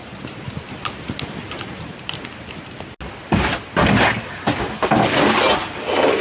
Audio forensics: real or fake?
real